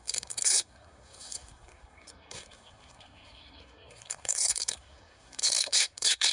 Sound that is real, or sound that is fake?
fake